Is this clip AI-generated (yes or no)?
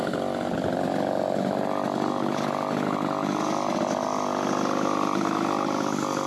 no